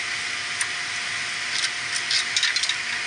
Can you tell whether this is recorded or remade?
recorded